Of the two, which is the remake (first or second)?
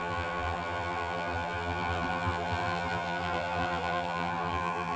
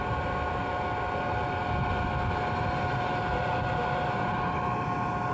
first